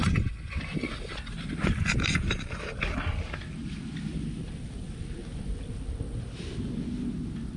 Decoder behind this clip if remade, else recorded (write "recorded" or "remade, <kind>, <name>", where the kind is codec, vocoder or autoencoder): recorded